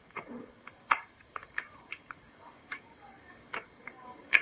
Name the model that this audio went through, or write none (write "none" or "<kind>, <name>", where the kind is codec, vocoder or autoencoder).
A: codec, DAC